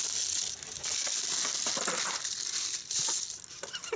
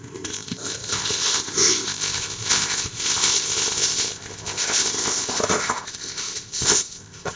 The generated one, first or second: second